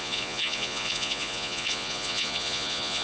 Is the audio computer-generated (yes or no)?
yes